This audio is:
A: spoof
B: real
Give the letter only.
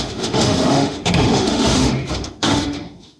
A